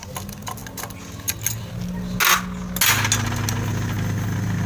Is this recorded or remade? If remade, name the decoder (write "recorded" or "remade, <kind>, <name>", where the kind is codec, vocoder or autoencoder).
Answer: recorded